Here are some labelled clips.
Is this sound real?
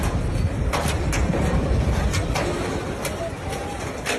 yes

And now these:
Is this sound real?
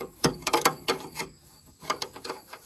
no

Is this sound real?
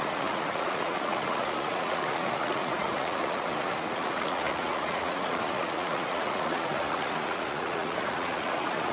no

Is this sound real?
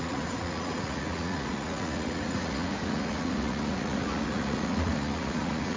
no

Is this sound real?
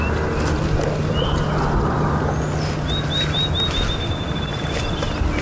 yes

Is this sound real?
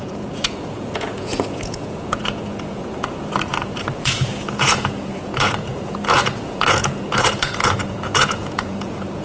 no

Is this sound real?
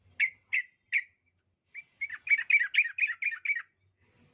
yes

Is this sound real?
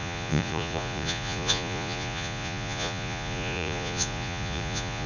no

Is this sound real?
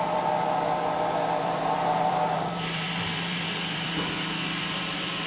no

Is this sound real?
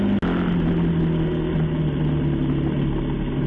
yes